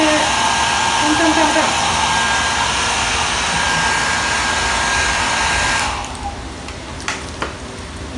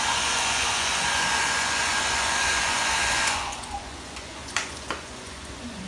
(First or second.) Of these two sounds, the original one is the first